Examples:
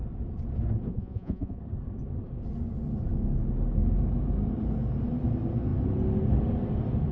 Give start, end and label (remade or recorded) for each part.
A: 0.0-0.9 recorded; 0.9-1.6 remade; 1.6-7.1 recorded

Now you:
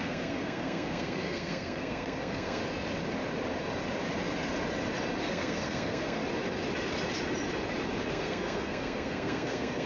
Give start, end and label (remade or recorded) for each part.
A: 0.0-2.6 remade; 2.6-5.3 recorded; 5.3-6.2 remade; 6.2-8.1 recorded; 8.1-9.9 remade

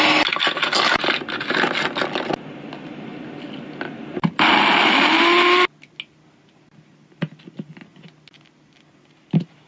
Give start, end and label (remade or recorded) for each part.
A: 0.0-9.7 recorded

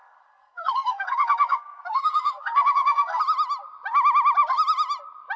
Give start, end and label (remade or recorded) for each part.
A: 0.0-3.2 remade; 3.2-5.4 recorded

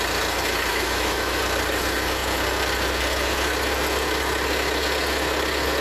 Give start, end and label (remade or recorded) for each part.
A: 0.0-0.7 recorded; 0.7-1.4 remade; 1.4-5.8 recorded

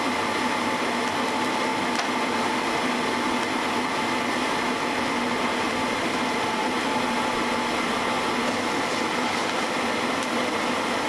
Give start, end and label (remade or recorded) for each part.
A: 0.0-11.1 recorded

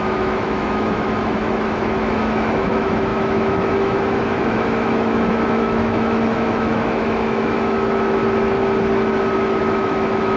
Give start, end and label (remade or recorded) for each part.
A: 0.0-8.2 remade; 8.2-9.6 recorded; 9.6-10.4 remade

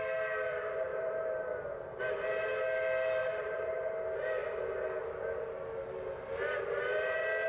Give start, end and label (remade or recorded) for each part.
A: 0.0-3.2 recorded; 3.2-3.9 remade; 3.9-7.5 recorded